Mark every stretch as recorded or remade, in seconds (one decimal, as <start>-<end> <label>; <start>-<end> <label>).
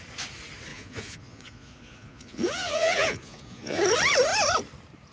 0.0-0.7 recorded; 0.7-3.8 remade; 3.8-5.1 recorded